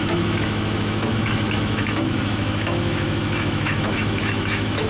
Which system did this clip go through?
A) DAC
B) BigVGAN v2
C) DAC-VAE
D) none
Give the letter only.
C